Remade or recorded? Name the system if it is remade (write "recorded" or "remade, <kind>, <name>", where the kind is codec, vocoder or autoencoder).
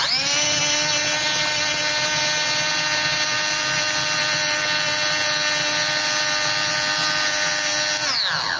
recorded